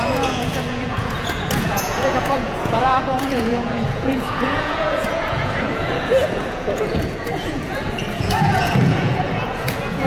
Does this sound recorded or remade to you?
remade